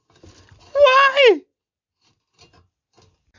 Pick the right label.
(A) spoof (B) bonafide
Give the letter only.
B